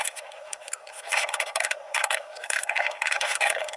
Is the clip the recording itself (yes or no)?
no